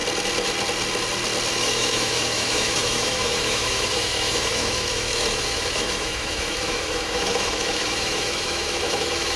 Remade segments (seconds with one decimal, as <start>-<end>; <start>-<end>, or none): 1.5-9.4